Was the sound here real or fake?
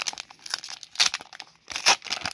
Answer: real